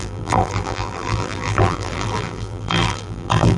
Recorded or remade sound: remade